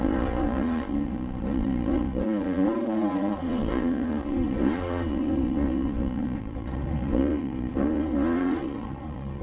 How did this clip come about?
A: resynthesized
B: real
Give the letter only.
A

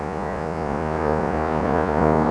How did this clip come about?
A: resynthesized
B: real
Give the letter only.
A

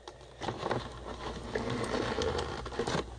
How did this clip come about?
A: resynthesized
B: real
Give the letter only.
B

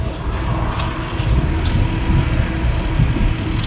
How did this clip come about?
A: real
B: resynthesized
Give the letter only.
A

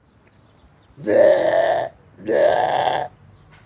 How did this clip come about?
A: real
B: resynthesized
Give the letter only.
A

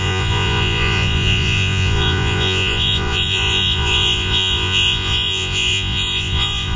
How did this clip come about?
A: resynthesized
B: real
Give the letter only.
A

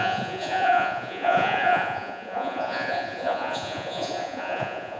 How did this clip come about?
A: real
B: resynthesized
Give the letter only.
B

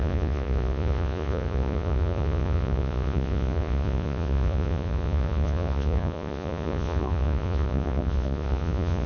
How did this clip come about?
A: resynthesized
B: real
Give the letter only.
A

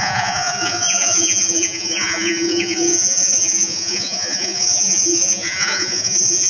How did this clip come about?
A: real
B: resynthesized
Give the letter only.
B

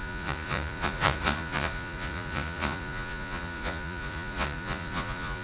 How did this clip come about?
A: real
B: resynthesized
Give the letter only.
B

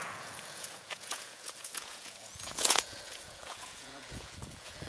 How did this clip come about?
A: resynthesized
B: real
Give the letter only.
A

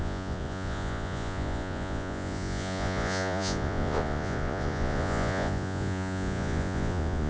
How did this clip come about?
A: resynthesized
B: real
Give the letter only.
A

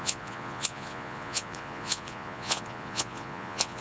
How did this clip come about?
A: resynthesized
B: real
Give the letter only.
A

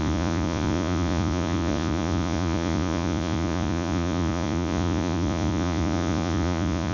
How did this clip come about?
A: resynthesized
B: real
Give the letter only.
A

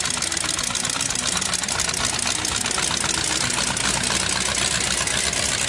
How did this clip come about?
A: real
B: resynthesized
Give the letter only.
A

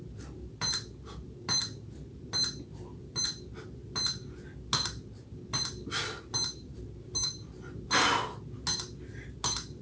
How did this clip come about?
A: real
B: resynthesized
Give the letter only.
A